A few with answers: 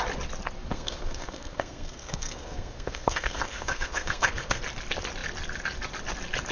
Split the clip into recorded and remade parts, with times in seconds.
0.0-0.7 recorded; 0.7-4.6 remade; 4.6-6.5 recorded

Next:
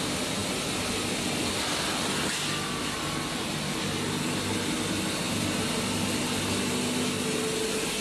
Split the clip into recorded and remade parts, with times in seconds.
0.0-8.0 recorded

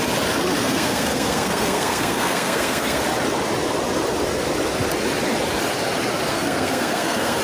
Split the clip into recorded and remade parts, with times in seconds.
0.0-0.6 recorded; 0.6-3.0 remade; 3.0-6.3 recorded; 6.3-7.4 remade

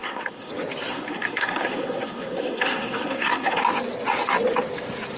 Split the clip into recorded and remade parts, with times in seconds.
0.0-0.5 remade; 0.5-0.9 recorded; 0.9-3.6 remade; 3.6-5.2 recorded